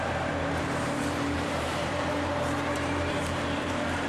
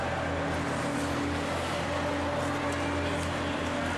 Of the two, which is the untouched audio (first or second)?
second